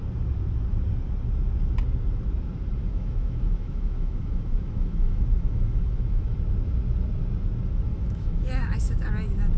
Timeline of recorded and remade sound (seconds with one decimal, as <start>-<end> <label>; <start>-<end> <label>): 0.0-2.8 recorded; 2.8-6.3 remade; 6.3-7.9 recorded; 7.9-9.1 remade; 9.1-9.6 recorded